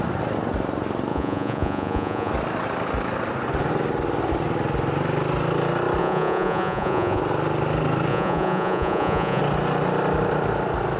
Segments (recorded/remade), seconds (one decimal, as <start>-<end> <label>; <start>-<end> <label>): 0.0-1.1 recorded; 1.1-2.3 remade; 2.3-6.0 recorded; 6.0-7.2 remade; 7.2-8.1 recorded; 8.1-9.4 remade; 9.4-11.0 recorded